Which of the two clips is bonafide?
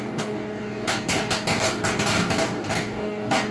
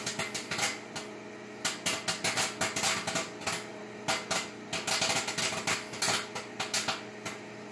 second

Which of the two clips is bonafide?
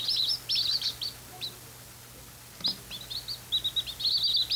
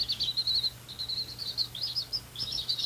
first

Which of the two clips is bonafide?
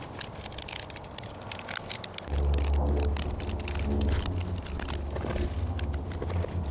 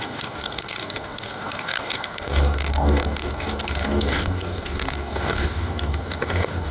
first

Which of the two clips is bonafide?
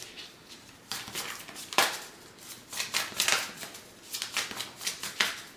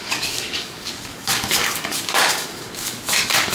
first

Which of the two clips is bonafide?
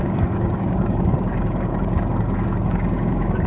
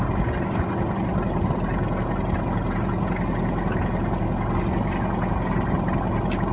second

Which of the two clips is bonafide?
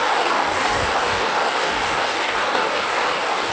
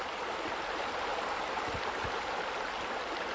second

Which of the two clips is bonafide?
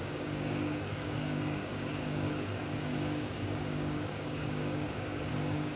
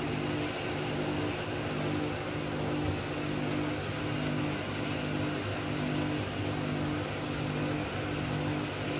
second